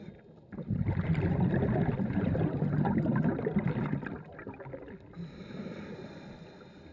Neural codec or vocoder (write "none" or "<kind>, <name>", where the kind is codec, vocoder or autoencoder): none